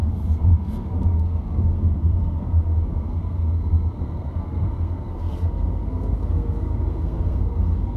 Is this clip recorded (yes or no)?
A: no